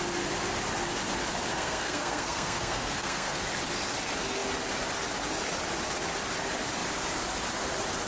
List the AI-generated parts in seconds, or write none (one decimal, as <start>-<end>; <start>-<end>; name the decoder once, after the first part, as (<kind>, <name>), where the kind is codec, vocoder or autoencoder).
1.5-3.4 (codec, SNAC)